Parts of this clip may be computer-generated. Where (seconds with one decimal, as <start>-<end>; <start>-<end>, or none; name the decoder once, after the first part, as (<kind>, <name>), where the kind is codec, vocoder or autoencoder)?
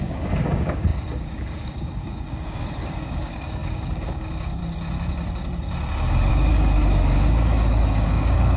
0.0-4.6 (codec, DAC); 6.3-8.6